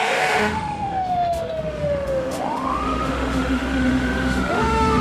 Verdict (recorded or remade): remade